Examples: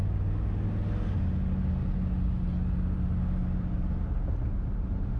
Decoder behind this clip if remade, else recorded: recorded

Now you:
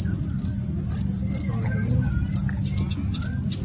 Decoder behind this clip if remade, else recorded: recorded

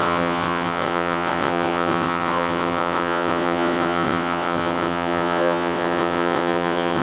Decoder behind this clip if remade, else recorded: remade, vocoder, WaveNeXt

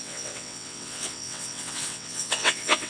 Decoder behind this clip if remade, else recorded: remade, vocoder, WaveNeXt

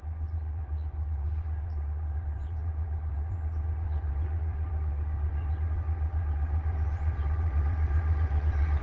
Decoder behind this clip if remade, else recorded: remade, vocoder, WaveNeXt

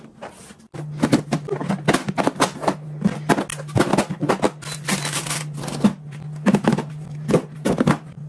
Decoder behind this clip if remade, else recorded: recorded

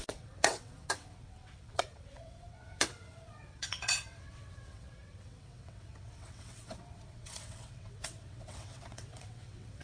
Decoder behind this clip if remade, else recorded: remade, vocoder, WaveNeXt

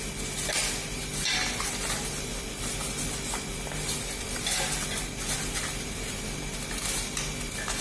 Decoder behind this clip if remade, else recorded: recorded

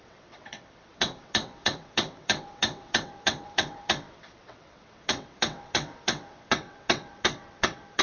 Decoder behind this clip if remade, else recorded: remade, vocoder, WaveNeXt